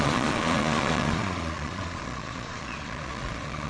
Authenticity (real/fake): fake